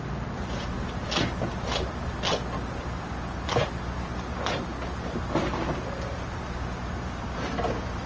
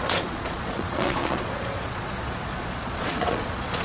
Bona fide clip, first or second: first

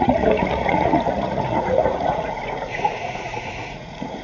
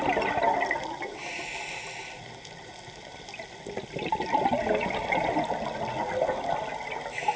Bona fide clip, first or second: second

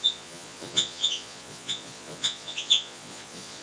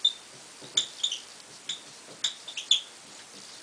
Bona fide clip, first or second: second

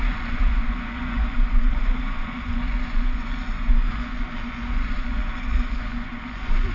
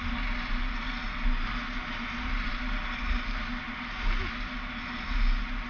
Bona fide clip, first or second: second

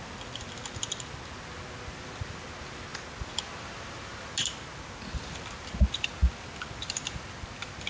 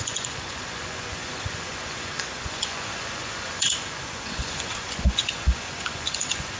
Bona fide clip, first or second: first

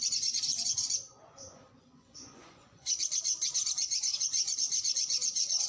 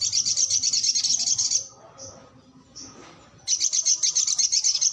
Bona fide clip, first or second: second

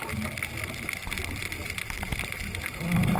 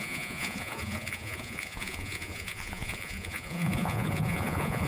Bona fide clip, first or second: first